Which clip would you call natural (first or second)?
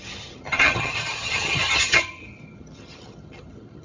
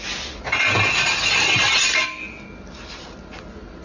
second